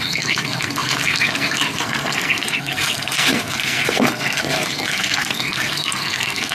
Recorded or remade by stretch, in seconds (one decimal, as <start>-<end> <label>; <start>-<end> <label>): 0.0-6.5 remade